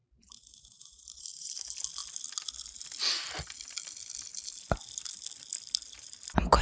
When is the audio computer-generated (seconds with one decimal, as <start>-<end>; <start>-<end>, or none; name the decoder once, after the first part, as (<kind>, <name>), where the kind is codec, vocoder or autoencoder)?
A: 0.0-1.6 (vocoder, BigVGAN v2)